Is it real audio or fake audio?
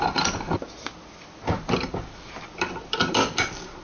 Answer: real